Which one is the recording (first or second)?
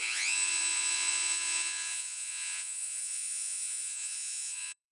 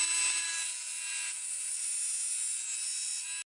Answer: second